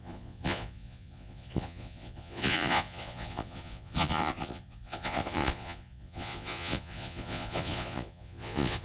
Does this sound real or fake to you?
fake